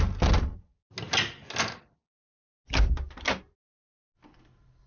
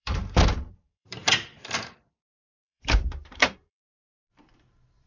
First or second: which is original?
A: first